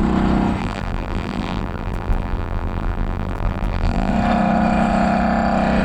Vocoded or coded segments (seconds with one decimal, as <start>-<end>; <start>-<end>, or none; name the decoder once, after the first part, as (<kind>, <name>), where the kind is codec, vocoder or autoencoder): 0.6-4.1 (vocoder, BigVGAN v2)